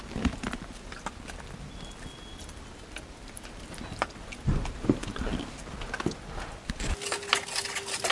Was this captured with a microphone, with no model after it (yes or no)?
yes